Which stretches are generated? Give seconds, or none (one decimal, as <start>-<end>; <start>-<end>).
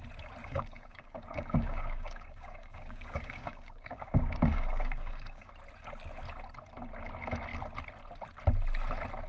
0.4-5.5